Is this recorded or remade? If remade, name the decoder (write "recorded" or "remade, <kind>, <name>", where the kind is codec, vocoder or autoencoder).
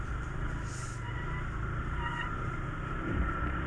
recorded